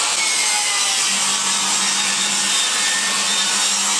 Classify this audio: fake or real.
real